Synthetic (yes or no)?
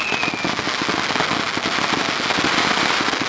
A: no